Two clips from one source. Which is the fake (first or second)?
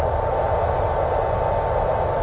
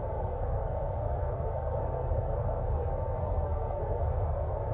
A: second